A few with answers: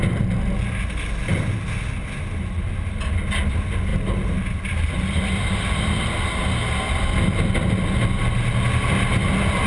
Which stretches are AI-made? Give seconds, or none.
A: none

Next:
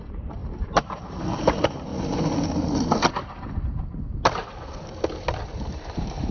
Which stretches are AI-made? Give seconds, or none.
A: 0.0-1.9; 5.7-6.3

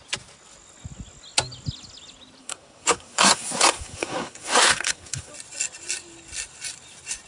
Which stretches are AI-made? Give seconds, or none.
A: 2.4-5.3